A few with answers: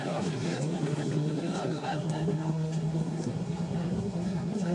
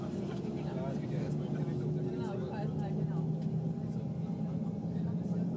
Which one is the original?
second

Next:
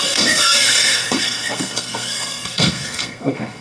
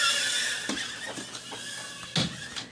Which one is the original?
second